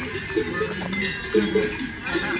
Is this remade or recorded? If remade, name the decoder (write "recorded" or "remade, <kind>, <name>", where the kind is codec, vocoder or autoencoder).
recorded